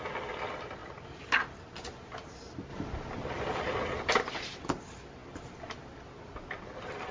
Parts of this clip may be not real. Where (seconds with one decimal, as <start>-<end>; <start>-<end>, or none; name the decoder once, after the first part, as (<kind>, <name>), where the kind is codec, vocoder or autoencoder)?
none